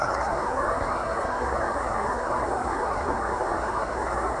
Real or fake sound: fake